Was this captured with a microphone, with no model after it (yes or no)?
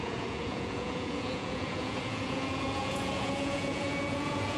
no